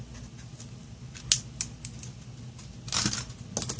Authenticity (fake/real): real